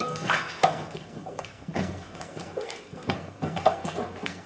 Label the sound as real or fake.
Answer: fake